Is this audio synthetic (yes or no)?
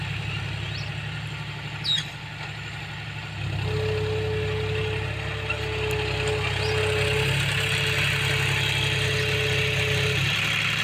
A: no